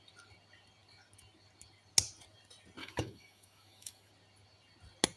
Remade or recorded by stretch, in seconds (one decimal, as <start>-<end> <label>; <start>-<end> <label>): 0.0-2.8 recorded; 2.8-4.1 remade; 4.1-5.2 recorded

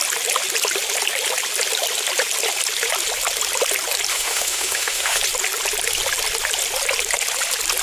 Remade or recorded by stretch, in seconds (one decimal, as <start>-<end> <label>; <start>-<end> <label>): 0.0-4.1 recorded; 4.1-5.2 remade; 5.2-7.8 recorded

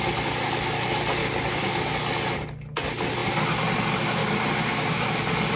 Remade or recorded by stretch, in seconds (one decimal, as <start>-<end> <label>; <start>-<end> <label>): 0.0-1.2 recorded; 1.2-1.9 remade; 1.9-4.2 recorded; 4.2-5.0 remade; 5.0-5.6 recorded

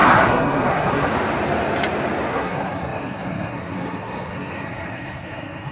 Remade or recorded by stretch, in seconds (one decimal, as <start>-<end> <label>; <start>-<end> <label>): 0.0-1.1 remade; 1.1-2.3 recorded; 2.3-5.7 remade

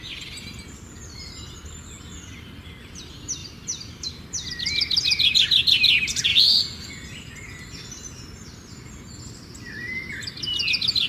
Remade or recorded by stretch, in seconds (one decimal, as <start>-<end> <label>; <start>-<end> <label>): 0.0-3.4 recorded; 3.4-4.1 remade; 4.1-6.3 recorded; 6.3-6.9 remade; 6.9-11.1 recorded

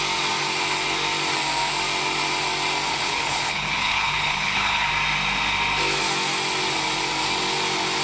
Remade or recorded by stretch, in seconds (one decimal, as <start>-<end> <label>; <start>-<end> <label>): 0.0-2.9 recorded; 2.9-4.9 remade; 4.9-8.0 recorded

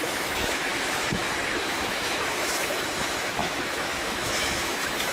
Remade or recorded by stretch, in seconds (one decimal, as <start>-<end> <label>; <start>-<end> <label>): 0.0-5.1 remade

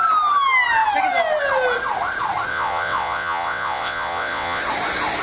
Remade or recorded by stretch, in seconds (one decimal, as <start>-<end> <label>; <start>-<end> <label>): 0.0-2.5 recorded; 2.5-4.6 remade; 4.6-5.2 recorded